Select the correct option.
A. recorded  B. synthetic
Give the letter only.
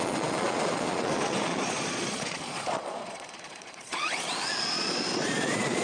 B